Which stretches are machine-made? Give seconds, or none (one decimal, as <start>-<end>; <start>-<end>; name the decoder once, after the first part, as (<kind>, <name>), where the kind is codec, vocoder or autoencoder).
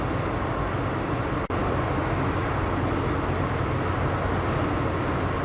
1.6-2.5 (codec, DAC)